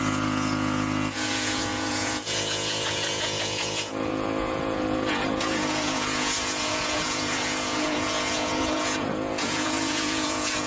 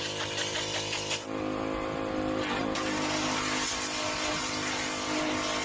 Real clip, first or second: second